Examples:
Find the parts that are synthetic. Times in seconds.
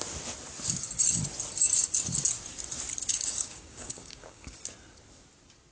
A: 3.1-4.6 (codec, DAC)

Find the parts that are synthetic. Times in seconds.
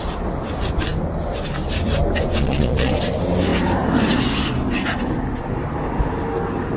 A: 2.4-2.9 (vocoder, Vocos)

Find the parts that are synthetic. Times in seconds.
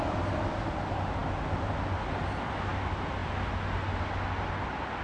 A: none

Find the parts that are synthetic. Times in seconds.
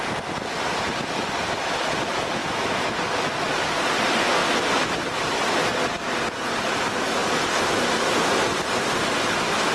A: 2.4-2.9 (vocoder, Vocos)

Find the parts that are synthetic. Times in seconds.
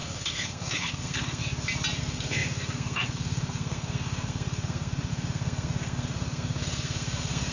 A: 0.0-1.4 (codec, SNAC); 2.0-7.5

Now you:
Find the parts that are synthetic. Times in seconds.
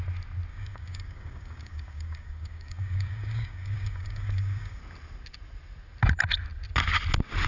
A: 0.5-4.8 (codec, DAC)